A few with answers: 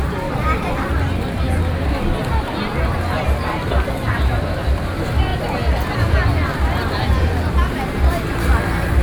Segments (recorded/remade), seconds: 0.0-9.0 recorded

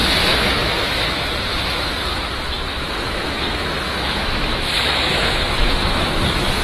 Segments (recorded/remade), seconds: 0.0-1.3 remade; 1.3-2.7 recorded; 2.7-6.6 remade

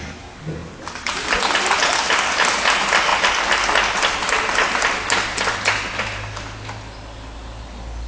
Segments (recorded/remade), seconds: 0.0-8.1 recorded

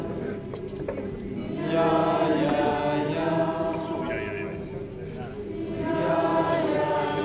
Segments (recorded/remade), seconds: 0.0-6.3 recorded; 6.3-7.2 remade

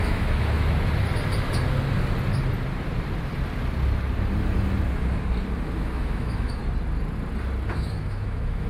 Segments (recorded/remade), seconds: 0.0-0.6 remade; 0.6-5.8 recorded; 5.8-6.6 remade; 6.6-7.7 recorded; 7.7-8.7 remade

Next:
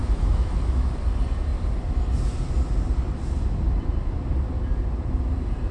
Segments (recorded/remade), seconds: 0.0-0.9 remade; 0.9-5.7 recorded

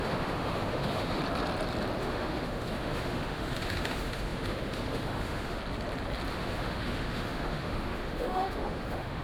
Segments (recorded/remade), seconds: 0.0-1.2 remade; 1.2-2.0 recorded; 2.0-5.6 remade; 5.6-6.3 recorded; 6.3-9.2 remade

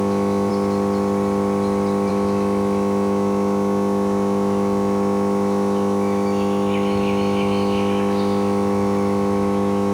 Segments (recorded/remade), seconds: 0.0-0.5 remade; 0.5-2.1 recorded; 2.1-9.9 remade